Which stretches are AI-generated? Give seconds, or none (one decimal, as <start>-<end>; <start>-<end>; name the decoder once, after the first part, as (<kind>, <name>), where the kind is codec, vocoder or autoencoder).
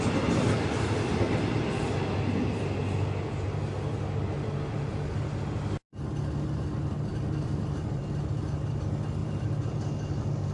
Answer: 7.1-8.0 (vocoder, BigVGAN v2); 9.2-9.8